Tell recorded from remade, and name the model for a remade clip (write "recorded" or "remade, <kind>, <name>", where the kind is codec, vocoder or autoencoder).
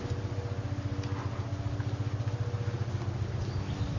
recorded